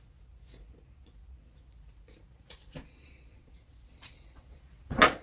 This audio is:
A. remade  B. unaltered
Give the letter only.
A